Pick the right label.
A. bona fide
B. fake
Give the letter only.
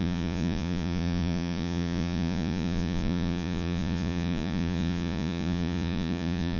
B